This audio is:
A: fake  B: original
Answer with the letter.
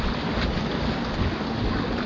B